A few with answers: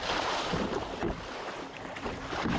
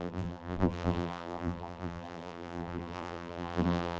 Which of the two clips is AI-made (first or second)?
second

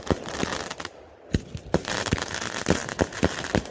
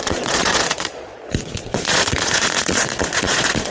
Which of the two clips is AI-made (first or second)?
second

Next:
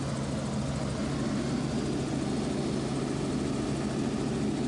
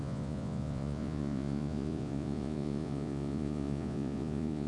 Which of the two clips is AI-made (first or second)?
second